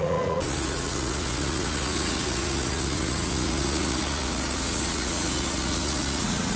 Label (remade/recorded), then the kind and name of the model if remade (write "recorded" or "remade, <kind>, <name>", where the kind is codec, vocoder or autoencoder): remade, vocoder, Vocos